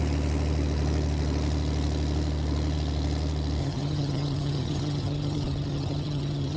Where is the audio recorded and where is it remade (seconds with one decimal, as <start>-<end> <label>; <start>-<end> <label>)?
0.0-3.6 recorded; 3.6-6.6 remade